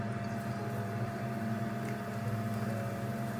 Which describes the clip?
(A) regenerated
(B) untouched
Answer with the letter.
B